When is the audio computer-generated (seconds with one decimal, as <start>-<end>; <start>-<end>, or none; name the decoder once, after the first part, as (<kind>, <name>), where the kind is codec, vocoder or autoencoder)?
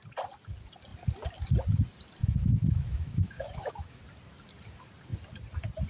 2.2-4.0 (autoencoder, DAC-VAE)